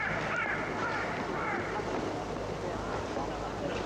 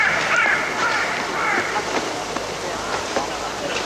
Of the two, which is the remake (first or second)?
second